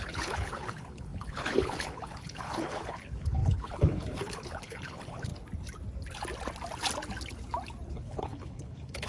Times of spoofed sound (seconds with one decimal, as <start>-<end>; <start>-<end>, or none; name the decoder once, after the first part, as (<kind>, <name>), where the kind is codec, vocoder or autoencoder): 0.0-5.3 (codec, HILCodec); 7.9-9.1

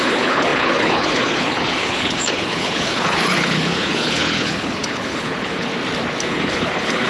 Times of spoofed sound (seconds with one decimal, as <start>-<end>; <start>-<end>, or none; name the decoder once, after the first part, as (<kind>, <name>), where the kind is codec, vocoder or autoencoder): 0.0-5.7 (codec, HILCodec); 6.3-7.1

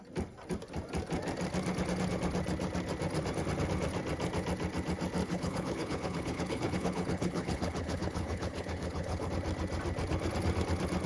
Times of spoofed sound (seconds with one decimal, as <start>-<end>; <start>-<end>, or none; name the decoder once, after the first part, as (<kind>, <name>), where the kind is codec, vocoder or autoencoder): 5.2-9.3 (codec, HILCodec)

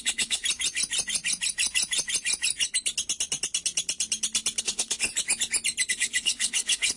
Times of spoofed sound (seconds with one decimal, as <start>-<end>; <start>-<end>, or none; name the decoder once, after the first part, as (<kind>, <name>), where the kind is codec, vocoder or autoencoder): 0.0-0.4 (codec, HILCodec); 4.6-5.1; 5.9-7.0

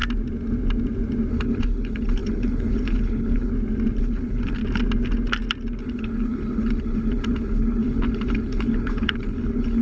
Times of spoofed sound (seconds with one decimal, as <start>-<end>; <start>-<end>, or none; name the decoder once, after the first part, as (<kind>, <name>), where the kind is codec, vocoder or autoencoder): 1.3-3.5 (codec, HILCodec); 4.0-4.6; 5.8-9.8

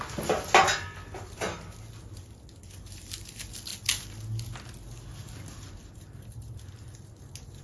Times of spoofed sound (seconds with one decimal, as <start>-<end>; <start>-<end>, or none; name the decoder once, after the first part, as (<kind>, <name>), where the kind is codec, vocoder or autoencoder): none

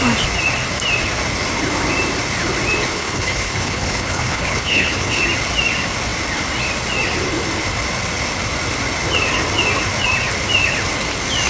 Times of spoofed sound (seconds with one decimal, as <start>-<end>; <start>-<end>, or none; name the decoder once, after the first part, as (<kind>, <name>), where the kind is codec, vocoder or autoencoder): 2.9-5.2 (codec, HILCodec)